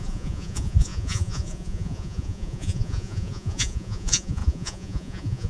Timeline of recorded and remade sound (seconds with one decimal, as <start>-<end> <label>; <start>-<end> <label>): 0.0-5.5 remade